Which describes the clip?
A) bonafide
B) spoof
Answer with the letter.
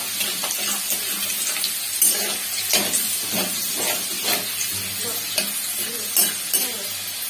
A